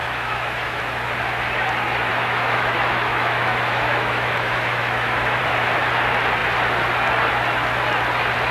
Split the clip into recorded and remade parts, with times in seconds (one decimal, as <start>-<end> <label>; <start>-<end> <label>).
0.0-0.8 remade; 0.8-2.1 recorded; 2.1-5.4 remade; 5.4-8.5 recorded